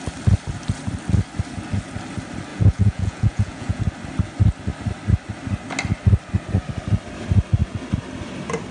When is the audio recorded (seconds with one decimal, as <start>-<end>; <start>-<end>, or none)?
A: 0.0-2.5; 3.8-8.7